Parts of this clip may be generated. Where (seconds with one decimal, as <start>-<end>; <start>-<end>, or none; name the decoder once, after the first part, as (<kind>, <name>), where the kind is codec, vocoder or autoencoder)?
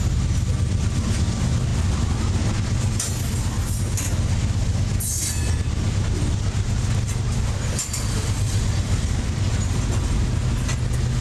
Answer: none